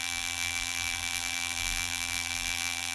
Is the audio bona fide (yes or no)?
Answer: no